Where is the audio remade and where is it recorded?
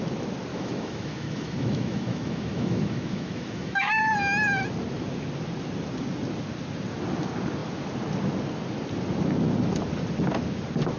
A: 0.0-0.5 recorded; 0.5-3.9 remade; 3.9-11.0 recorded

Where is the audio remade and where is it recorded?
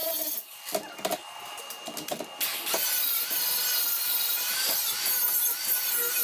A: 0.0-6.2 recorded